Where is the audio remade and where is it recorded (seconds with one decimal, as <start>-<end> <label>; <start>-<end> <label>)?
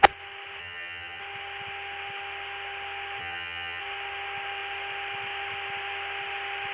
0.0-0.6 recorded; 0.6-1.2 remade; 1.2-3.2 recorded; 3.2-3.8 remade; 3.8-6.7 recorded